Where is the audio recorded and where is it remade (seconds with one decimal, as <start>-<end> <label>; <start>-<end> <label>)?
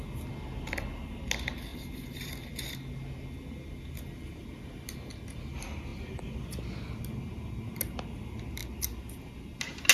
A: 0.0-1.7 recorded; 1.7-2.7 remade; 2.7-8.6 recorded; 8.6-9.4 remade; 9.4-9.9 recorded